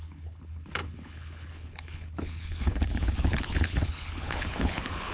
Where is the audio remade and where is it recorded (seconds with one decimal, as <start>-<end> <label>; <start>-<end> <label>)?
0.0-5.1 remade